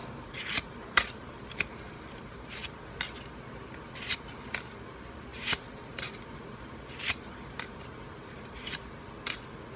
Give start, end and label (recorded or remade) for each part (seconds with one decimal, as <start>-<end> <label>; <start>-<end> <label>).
0.0-2.5 remade; 2.5-5.3 recorded; 5.3-8.8 remade; 8.8-9.8 recorded